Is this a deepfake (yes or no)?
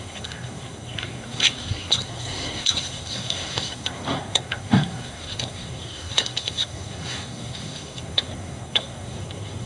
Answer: yes